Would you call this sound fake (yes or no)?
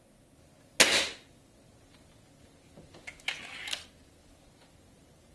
no